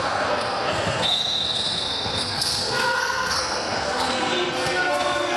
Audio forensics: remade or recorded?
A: remade